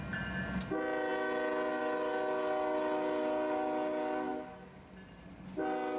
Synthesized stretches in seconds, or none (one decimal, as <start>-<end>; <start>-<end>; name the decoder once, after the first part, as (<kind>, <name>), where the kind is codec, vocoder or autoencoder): none